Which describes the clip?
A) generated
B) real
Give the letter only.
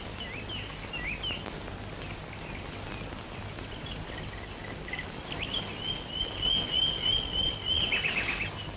B